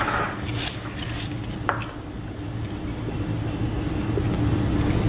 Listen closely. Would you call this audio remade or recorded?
recorded